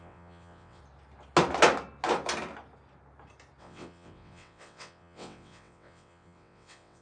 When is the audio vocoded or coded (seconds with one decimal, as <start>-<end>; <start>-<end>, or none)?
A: 0.0-0.8; 3.6-7.0